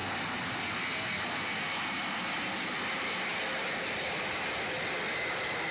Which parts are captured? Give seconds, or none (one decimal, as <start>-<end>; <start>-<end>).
0.0-5.7